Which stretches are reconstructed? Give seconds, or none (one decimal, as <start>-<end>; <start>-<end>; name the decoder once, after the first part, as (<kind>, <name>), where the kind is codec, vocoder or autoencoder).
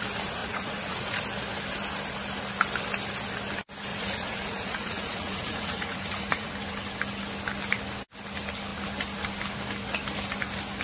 0.4-1.2 (vocoder, Vocos); 3.9-6.5